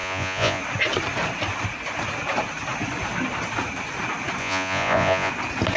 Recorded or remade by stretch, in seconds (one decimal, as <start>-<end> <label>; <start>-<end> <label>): 0.0-0.6 remade; 0.6-4.4 recorded; 4.4-5.3 remade; 5.3-5.8 recorded